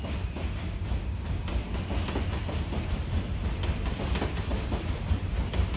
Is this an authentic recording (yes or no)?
yes